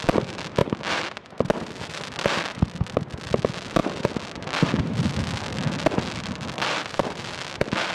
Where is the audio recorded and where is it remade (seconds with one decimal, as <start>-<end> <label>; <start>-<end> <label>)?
0.0-7.9 recorded

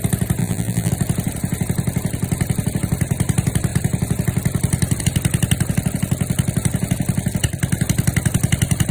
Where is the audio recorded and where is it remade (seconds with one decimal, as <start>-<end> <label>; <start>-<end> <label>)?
0.0-0.4 recorded; 0.4-0.9 remade; 0.9-8.9 recorded

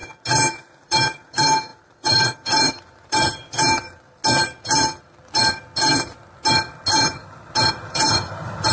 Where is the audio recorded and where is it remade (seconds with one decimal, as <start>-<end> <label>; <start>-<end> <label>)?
0.0-0.5 recorded; 0.5-4.2 remade; 4.2-7.7 recorded; 7.7-8.7 remade

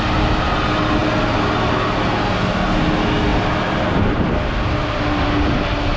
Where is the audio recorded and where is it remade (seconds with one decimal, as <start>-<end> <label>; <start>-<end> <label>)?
0.0-3.3 recorded; 3.3-4.3 remade; 4.3-6.0 recorded

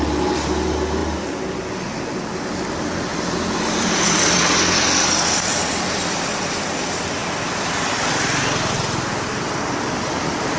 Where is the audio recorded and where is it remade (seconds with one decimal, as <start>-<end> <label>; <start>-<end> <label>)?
0.0-3.1 recorded; 3.1-6.6 remade; 6.6-7.2 recorded; 7.2-8.4 remade; 8.4-10.6 recorded

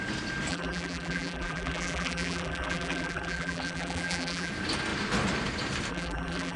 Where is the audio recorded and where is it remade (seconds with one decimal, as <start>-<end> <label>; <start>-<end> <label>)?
0.0-0.5 recorded; 0.5-4.5 remade; 4.5-5.9 recorded; 5.9-6.6 remade